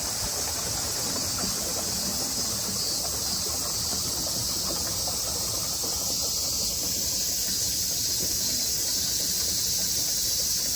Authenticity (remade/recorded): recorded